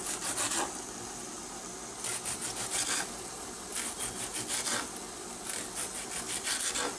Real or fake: real